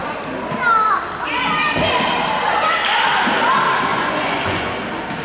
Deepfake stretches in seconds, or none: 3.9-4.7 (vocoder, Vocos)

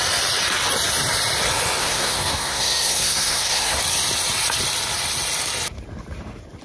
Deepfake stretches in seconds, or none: 1.8-3.8 (codec, SNAC)

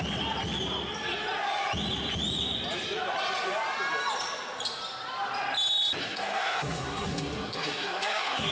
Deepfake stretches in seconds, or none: 6.0-8.5 (codec, SNAC)

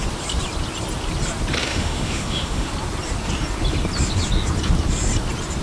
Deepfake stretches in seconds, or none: 1.6-2.7 (autoencoder, DAC-VAE)